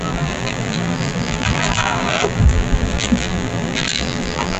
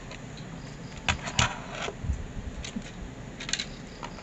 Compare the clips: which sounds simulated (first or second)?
first